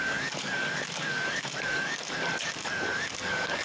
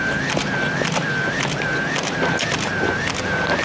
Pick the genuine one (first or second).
second